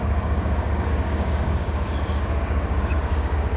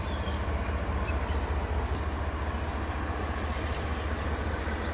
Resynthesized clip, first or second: first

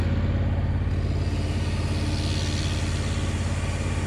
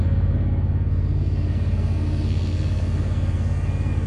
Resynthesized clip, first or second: second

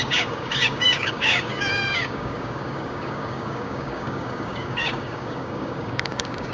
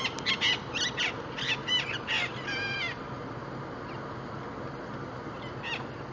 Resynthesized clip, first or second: first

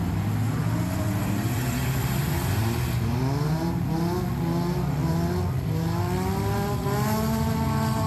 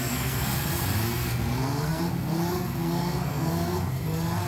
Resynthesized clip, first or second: second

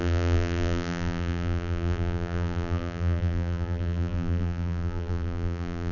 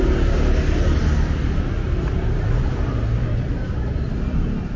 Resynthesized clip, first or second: first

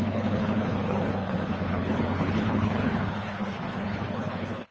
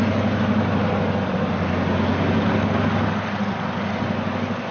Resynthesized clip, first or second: first